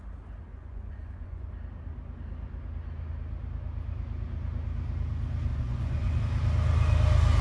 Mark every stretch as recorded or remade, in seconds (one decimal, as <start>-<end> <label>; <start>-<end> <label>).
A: 0.0-0.5 recorded; 0.5-1.5 remade; 1.5-5.5 recorded; 5.5-6.2 remade; 6.2-7.4 recorded

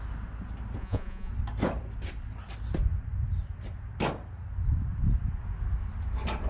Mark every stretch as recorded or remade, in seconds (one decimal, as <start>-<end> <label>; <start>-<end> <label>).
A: 0.0-0.8 recorded; 0.8-1.3 remade; 1.3-6.5 recorded